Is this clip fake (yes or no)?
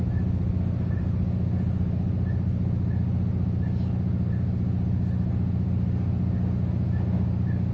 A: no